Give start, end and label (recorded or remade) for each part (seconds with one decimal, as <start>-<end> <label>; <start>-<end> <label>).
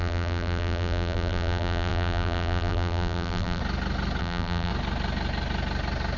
0.0-3.6 remade; 3.6-4.2 recorded; 4.2-4.7 remade; 4.7-6.2 recorded